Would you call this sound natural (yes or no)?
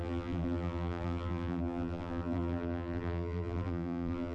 no